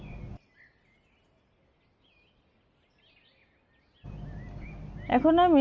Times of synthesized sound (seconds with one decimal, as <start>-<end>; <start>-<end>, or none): none